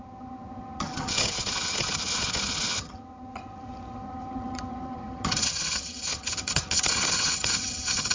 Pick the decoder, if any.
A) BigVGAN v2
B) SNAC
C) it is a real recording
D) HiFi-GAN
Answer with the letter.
D